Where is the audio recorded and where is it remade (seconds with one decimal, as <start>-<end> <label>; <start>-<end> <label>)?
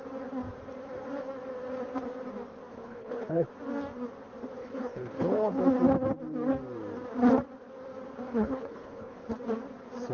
0.0-2.7 recorded; 2.7-3.5 remade; 3.5-4.6 recorded; 4.6-5.6 remade; 5.6-8.3 recorded; 8.3-9.3 remade; 9.3-10.1 recorded